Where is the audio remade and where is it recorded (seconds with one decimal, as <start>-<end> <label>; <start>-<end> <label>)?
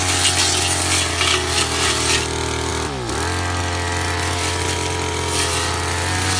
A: 0.0-6.4 recorded